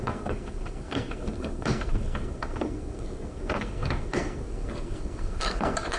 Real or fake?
fake